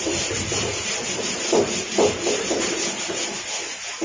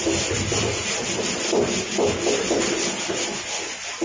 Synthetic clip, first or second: first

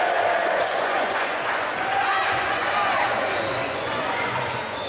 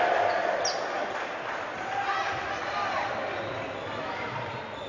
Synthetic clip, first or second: first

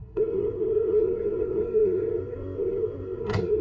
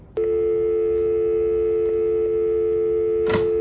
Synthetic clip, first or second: first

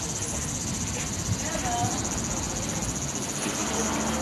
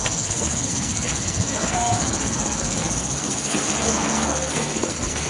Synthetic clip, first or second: second